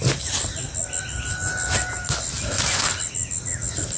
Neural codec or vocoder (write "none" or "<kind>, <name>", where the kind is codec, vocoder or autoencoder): none